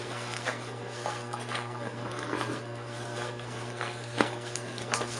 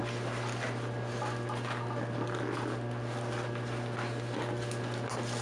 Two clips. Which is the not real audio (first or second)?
first